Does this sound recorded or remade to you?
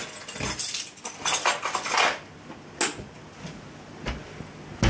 recorded